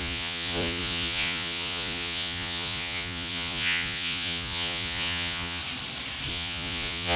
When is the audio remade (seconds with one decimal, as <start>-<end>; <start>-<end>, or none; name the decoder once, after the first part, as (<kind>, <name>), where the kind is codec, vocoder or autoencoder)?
0.0-5.6 (vocoder, Vocos); 6.3-7.2